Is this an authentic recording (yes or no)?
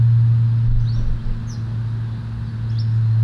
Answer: yes